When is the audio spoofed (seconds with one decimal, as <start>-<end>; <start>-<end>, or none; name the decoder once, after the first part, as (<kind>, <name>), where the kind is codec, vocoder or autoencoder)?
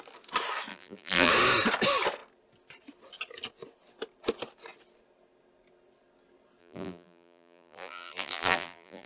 0.7-1.3 (vocoder, BigVGAN v2); 6.6-9.1